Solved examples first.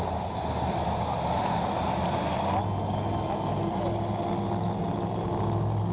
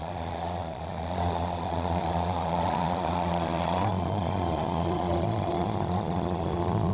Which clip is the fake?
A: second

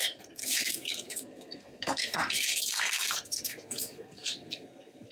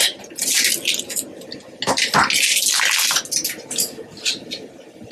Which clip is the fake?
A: first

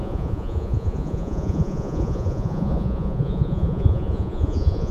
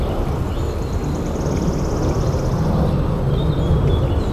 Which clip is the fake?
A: first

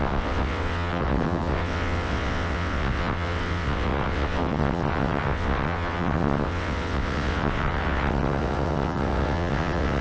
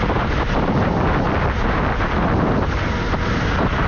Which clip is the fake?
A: first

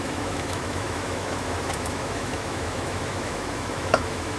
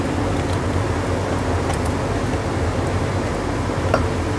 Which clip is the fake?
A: first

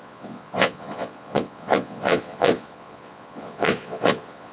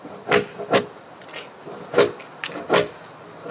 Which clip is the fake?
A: first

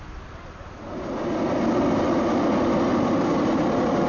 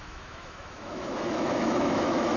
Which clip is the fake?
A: second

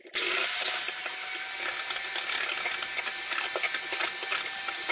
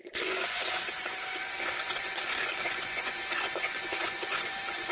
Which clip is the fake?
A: second